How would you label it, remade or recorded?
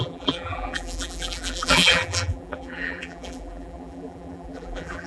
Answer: remade